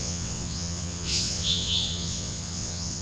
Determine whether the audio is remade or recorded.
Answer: remade